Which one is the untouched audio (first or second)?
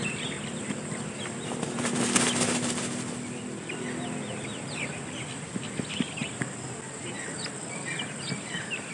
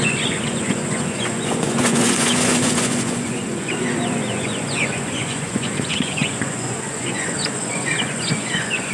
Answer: first